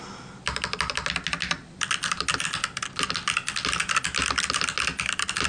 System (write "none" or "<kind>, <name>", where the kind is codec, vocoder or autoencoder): none